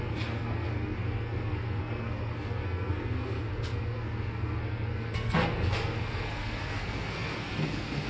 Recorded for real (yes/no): no